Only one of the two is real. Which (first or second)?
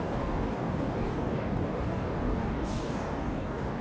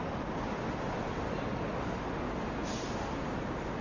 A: second